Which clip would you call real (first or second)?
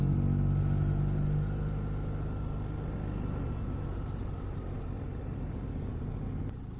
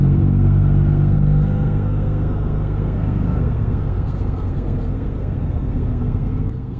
first